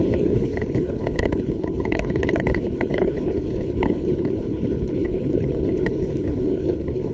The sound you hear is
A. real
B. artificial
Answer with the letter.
B